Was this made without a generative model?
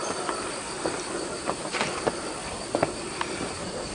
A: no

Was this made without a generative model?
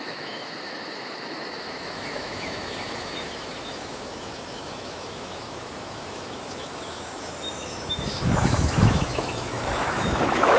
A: no